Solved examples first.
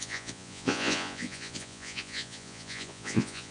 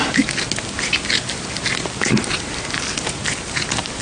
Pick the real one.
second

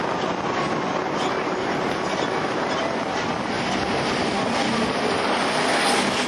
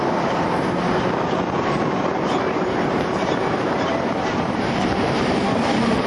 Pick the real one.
first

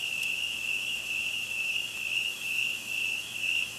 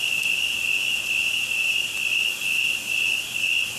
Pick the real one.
second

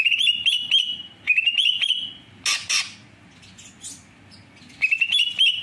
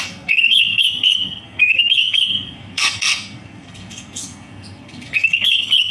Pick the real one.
first